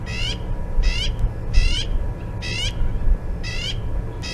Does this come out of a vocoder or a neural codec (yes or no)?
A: no